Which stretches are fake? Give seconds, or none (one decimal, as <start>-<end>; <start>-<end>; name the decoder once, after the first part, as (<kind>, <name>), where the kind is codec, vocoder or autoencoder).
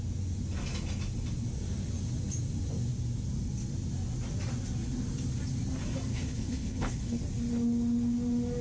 6.1-7.2 (codec, HILCodec)